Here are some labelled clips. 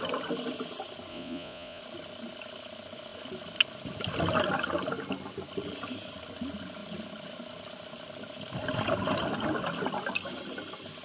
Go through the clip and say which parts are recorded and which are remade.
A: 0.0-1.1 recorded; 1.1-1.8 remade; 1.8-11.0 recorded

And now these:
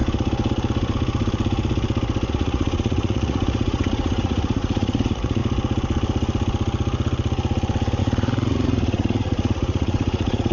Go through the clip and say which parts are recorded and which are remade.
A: 0.0-2.3 recorded; 2.3-5.4 remade; 5.4-8.0 recorded; 8.0-10.5 remade

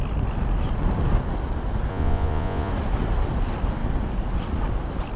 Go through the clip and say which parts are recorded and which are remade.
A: 0.0-1.9 recorded; 1.9-2.7 remade; 2.7-5.2 recorded

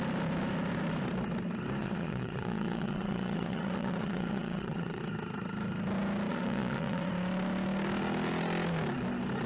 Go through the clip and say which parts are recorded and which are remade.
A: 0.0-1.8 recorded; 1.8-5.0 remade; 5.0-6.3 recorded; 6.3-7.1 remade; 7.1-9.5 recorded

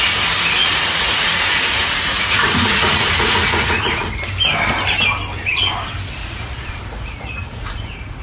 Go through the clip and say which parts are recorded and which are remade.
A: 0.0-0.6 recorded; 0.6-4.1 remade; 4.1-6.2 recorded; 6.2-8.2 remade

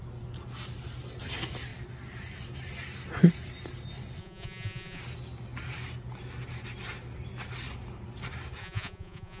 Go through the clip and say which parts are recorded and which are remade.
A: 0.0-4.2 recorded; 4.2-5.0 remade; 5.0-8.6 recorded; 8.6-9.4 remade

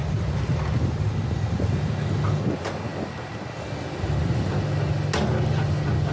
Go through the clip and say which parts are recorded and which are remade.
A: 0.0-6.1 recorded

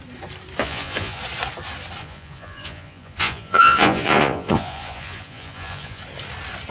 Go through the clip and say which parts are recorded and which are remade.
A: 0.0-0.6 recorded; 0.6-1.2 remade; 1.2-2.0 recorded; 2.0-6.0 remade; 6.0-6.7 recorded